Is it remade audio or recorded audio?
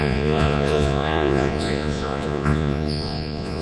remade